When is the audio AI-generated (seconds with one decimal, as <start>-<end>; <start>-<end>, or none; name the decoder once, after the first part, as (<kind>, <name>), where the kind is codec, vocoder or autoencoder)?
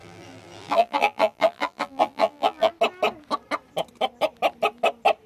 0.0-2.7 (vocoder, BigVGAN v2)